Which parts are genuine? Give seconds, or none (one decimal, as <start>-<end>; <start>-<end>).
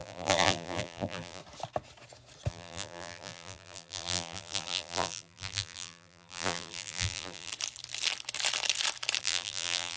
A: 1.4-2.5; 7.5-9.2